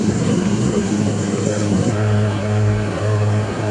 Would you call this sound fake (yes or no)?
yes